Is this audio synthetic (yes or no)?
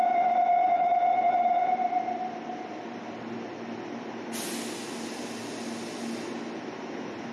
no